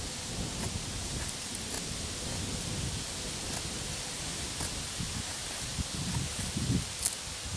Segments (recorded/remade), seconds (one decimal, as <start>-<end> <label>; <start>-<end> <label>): 0.0-7.6 recorded